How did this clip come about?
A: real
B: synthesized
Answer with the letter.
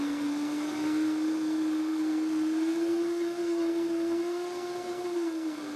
B